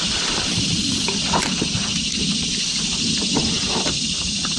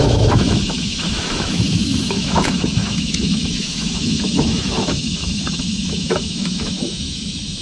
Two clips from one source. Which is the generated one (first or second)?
second